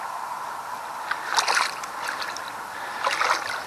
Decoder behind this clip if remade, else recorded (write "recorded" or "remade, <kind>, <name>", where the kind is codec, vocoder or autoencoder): recorded